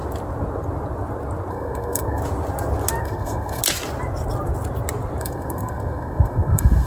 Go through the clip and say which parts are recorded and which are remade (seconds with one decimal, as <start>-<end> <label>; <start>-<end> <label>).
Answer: 0.0-1.5 recorded; 1.5-2.2 remade; 2.2-3.0 recorded; 3.0-3.6 remade; 3.6-5.2 recorded; 5.2-6.9 remade